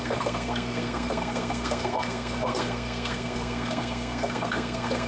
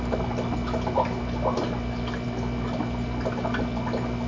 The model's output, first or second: first